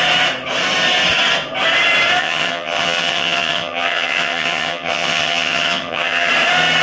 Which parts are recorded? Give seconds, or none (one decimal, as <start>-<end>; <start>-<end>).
0.0-2.2; 6.3-6.8